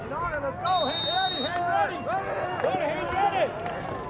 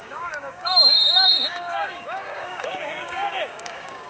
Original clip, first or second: first